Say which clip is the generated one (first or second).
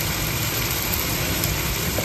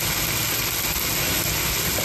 first